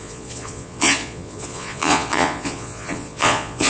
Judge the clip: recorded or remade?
remade